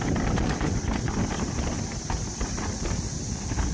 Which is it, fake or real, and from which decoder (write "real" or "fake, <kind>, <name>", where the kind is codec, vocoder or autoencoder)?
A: real